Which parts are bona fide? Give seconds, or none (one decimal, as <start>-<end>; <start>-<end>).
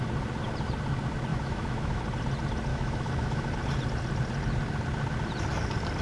0.0-1.3; 2.0-2.7; 3.5-6.0